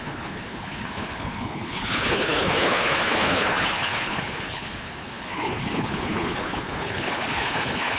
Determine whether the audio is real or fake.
fake